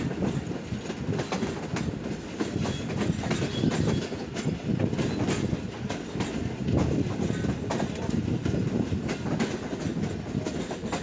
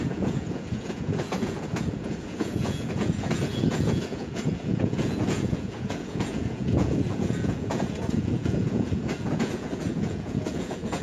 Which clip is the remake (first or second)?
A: second